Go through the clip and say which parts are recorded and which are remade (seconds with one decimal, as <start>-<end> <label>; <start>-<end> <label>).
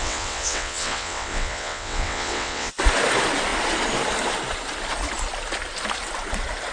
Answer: 0.0-2.7 remade; 2.7-6.7 recorded